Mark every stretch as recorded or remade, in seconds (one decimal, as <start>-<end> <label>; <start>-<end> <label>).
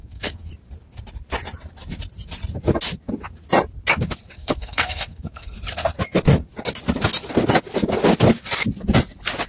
0.0-0.5 remade; 0.5-4.4 recorded; 4.4-5.6 remade; 5.6-9.5 recorded